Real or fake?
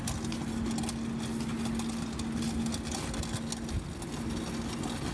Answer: real